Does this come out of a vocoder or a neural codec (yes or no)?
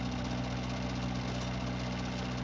no